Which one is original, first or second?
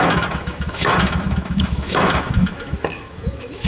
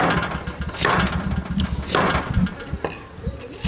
second